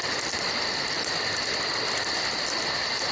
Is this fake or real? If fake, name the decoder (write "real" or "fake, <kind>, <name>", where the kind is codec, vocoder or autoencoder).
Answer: real